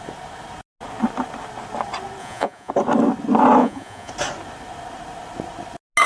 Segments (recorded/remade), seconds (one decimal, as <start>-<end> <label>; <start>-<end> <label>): 0.0-2.2 recorded; 2.2-2.7 remade; 2.7-3.6 recorded; 3.6-4.1 remade; 4.1-6.1 recorded